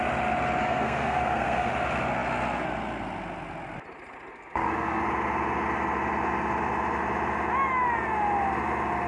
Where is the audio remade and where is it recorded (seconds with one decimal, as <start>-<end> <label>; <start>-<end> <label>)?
0.0-0.6 recorded; 0.6-1.7 remade; 1.7-4.3 recorded; 4.3-5.0 remade; 5.0-9.1 recorded